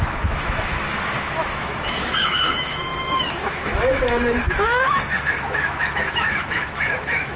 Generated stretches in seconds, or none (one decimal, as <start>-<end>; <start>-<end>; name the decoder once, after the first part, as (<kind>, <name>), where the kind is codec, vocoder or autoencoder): 0.0-7.4 (autoencoder, DAC-VAE)